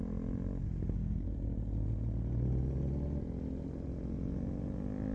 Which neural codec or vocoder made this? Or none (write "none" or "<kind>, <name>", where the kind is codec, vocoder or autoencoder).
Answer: none